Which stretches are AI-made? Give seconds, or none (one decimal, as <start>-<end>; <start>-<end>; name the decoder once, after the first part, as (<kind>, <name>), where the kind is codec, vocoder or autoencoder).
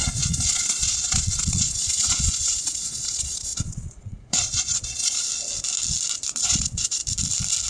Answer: 0.0-5.3 (vocoder, Vocos); 6.4-7.0